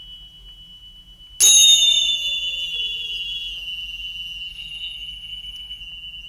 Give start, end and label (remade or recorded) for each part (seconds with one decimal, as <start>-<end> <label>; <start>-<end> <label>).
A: 0.0-4.5 recorded; 4.5-5.8 remade; 5.8-6.3 recorded